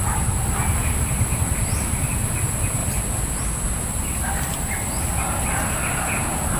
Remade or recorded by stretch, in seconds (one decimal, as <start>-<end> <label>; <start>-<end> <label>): 0.0-6.6 recorded